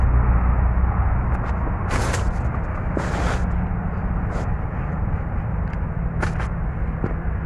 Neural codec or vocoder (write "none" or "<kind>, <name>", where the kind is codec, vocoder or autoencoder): none